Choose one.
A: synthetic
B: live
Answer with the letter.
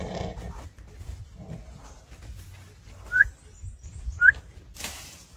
B